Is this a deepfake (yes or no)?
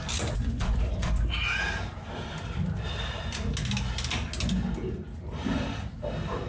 no